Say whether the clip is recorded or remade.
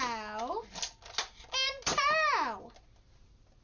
recorded